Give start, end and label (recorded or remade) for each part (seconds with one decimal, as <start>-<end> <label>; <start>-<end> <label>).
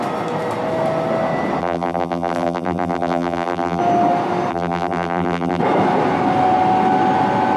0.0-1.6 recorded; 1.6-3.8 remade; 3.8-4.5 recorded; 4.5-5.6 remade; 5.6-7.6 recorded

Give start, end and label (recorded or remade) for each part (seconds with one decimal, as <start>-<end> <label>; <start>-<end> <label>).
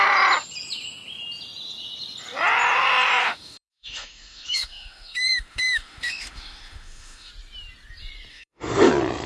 0.0-3.2 recorded; 3.2-7.3 remade; 7.3-8.3 recorded; 8.3-8.9 remade; 8.9-9.3 recorded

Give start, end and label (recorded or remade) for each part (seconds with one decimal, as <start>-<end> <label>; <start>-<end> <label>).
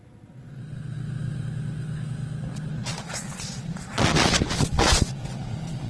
0.0-0.6 remade; 0.6-2.7 recorded; 2.7-5.9 remade